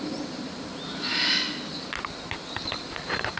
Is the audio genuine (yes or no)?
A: yes